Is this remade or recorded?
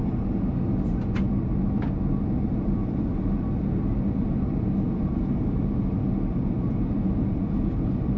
recorded